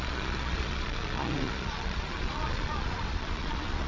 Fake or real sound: fake